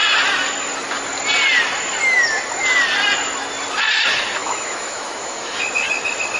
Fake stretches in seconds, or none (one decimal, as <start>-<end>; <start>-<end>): 4.4-5.6